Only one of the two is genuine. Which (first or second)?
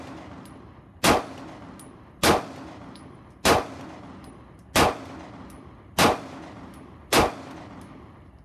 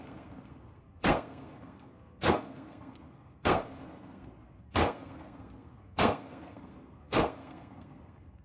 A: first